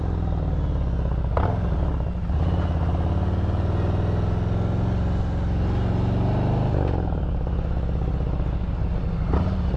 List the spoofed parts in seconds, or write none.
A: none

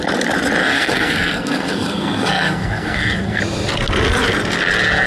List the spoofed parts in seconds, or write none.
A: 0.6-3.4 (codec, SNAC)